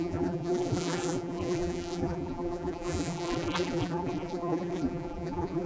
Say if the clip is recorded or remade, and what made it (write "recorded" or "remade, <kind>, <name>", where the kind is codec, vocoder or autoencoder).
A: remade, vocoder, BigVGAN v2